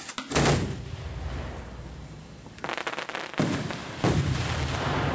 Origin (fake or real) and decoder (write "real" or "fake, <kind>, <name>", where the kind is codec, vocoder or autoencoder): real